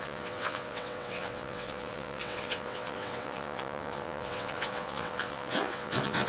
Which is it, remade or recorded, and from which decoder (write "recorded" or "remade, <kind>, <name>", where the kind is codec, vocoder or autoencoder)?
remade, vocoder, WaveNeXt